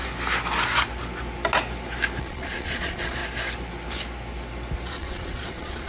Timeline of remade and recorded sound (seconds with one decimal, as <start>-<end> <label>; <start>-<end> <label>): 0.0-2.2 recorded; 2.2-3.2 remade; 3.2-4.9 recorded; 4.9-5.9 remade